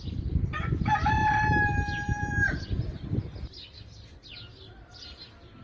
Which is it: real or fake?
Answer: real